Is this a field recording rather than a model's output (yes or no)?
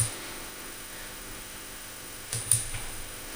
no